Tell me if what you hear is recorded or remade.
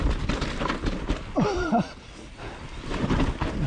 recorded